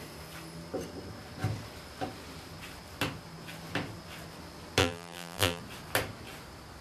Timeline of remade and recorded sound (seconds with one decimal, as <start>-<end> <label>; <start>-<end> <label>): 0.0-4.8 recorded; 4.8-5.6 remade; 5.6-6.8 recorded